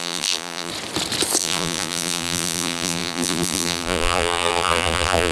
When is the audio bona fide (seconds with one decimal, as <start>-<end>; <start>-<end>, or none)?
0.7-1.4